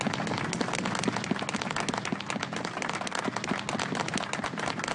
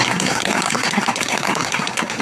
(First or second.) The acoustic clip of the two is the first